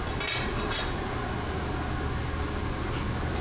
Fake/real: real